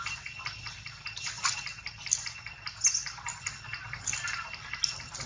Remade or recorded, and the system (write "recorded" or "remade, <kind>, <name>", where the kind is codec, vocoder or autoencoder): recorded